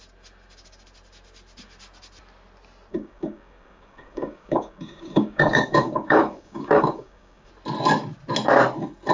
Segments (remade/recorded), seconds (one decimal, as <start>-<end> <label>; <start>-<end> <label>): 0.0-2.9 recorded; 2.9-7.5 remade; 7.5-9.1 recorded